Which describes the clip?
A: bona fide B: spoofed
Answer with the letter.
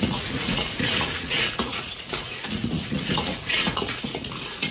B